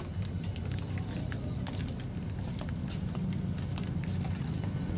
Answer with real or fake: real